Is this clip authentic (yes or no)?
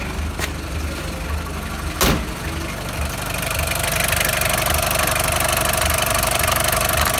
yes